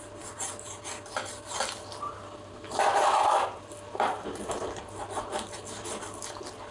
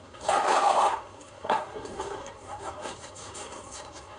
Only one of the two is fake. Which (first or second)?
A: second